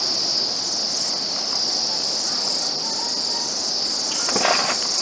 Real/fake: real